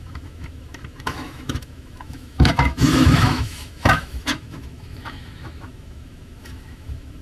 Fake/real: fake